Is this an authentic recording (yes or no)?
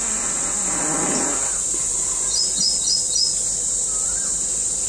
yes